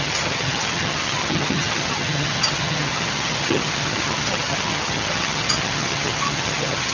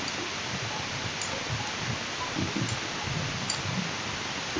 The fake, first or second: first